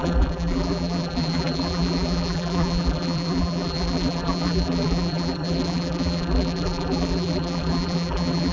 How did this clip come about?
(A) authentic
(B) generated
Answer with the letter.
B